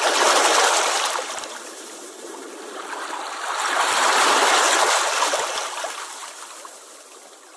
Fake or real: real